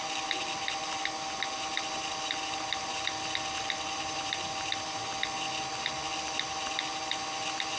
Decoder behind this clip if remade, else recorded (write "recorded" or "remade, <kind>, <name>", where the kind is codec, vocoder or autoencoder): remade, vocoder, BigVGAN v2